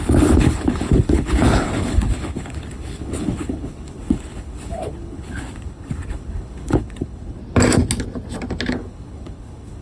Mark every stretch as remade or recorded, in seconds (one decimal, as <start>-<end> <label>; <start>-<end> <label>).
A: 0.0-7.4 remade; 7.4-8.7 recorded; 8.7-9.8 remade